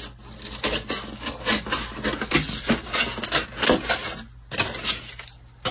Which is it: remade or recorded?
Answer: recorded